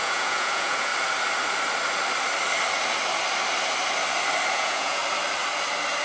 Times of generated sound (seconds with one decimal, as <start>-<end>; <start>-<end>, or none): 0.0-0.9; 4.5-5.0